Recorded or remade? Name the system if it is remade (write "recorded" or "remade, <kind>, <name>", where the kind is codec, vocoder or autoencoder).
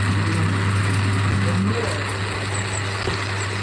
recorded